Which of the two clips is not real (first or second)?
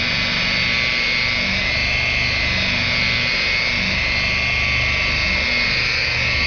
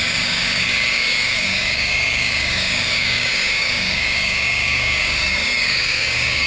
second